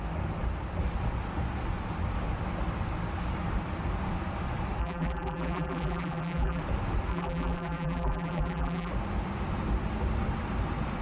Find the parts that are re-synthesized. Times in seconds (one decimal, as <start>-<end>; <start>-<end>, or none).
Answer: 4.8-6.6; 7.1-8.9